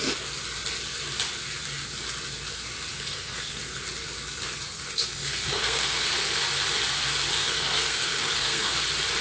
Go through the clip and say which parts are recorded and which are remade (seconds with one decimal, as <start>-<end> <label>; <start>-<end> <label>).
0.0-2.9 recorded; 2.9-3.6 remade; 3.6-4.7 recorded; 4.7-6.1 remade; 6.1-7.4 recorded; 7.4-8.7 remade; 8.7-9.2 recorded